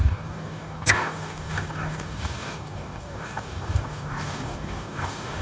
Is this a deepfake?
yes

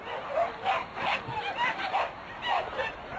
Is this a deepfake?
no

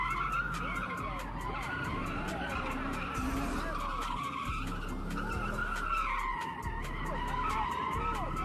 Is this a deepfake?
no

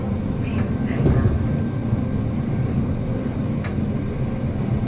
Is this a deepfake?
no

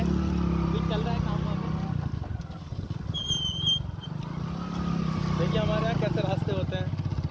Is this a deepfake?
no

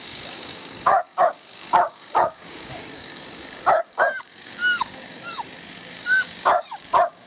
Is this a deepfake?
yes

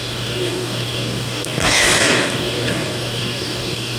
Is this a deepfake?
yes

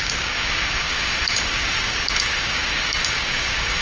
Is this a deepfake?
yes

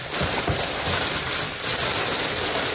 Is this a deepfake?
no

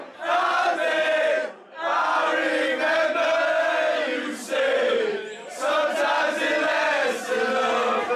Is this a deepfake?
no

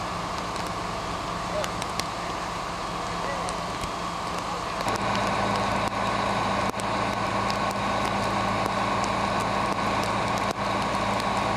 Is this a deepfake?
no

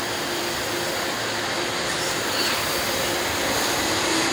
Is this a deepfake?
no